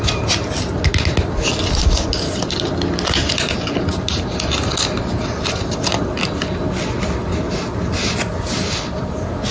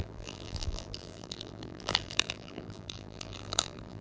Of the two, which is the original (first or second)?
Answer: first